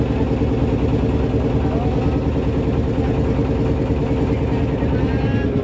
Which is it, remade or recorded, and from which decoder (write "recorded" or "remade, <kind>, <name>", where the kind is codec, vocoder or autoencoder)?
recorded